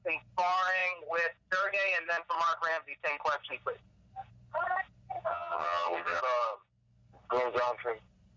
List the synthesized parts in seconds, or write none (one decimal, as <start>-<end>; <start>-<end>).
5.3-6.2